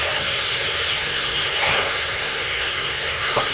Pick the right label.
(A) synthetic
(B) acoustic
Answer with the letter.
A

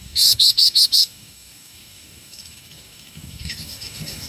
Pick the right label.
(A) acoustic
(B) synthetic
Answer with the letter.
B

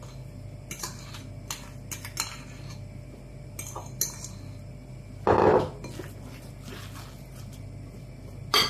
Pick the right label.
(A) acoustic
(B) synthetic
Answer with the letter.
A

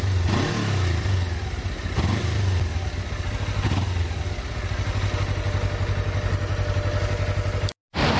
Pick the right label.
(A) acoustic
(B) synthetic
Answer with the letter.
A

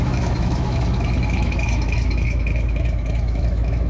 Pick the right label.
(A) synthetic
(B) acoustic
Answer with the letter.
A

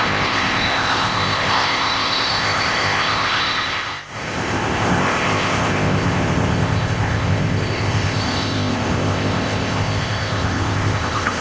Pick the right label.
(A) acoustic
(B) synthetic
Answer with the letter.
B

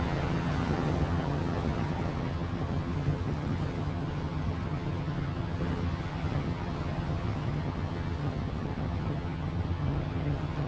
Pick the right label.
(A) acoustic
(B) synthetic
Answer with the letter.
B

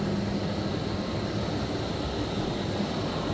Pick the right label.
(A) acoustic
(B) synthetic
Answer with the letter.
A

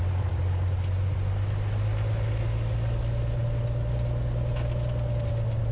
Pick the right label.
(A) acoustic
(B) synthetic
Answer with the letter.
A